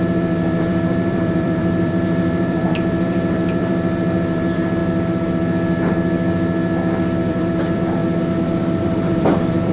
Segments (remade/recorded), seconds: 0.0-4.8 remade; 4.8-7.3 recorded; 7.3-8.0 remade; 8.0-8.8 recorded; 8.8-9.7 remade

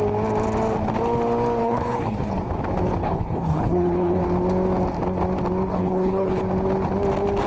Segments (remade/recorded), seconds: 0.0-1.6 recorded; 1.6-2.3 remade; 2.3-3.0 recorded; 3.0-4.2 remade; 4.2-5.7 recorded; 5.7-6.4 remade; 6.4-7.5 recorded

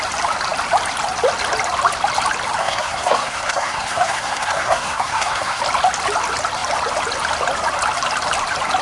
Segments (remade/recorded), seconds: 0.0-2.6 recorded; 2.6-5.6 remade; 5.6-8.8 recorded

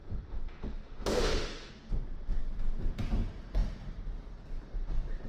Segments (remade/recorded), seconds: 0.0-1.7 remade; 1.7-5.3 recorded

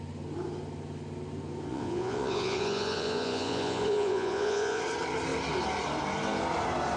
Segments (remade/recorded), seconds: 0.0-1.7 recorded; 1.7-4.8 remade; 4.8-7.0 recorded

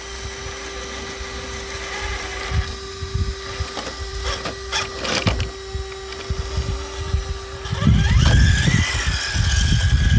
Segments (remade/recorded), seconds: 0.0-10.2 recorded